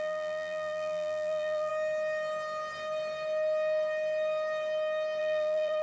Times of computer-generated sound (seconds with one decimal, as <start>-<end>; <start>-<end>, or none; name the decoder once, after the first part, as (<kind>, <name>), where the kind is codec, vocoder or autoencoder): 0.0-1.7 (vocoder, BigVGAN v2); 5.2-5.8